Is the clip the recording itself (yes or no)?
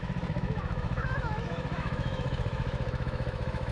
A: no